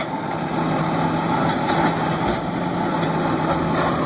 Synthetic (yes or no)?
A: no